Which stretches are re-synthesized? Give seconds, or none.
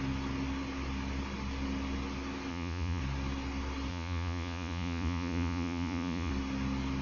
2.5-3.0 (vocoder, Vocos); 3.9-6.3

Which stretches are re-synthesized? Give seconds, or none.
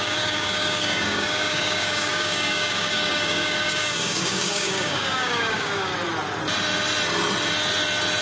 0.0-5.9 (codec, DAC)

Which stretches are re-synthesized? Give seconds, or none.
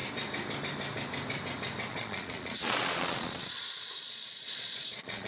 1.9-5.3 (vocoder, Vocos)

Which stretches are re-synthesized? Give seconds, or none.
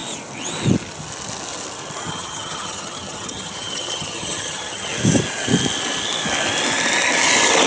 2.1-4.9 (vocoder, HiFi-GAN)